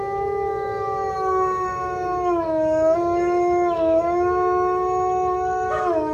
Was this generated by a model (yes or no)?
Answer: yes